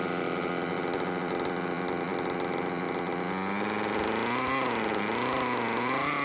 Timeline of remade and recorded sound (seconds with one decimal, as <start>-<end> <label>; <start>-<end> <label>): 0.0-6.2 recorded